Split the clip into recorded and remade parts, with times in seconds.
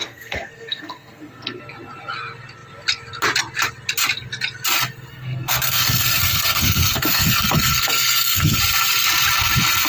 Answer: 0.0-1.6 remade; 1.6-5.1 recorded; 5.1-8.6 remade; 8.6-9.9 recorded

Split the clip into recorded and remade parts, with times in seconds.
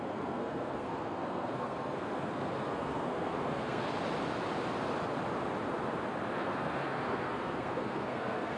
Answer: 0.0-3.8 remade; 3.8-6.4 recorded; 6.4-8.6 remade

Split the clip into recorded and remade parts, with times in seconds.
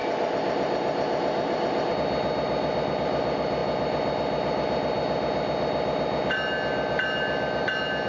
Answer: 0.0-8.1 recorded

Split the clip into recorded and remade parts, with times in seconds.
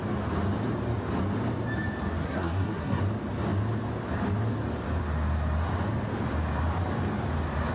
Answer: 0.0-2.2 recorded; 2.2-3.0 remade; 3.0-7.7 recorded